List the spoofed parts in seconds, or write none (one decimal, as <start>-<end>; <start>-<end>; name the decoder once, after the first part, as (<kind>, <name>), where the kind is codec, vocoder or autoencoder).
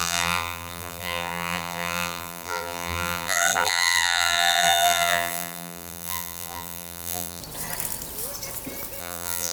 0.0-7.4 (vocoder, BigVGAN v2); 9.0-9.5